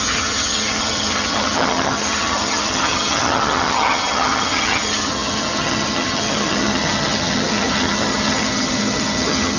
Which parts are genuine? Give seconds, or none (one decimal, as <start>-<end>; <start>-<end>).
none